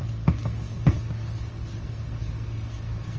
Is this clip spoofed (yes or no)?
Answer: yes